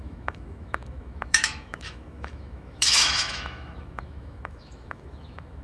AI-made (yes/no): yes